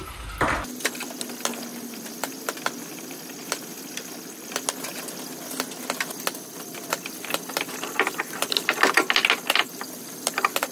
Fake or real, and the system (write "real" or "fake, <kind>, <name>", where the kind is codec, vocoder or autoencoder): real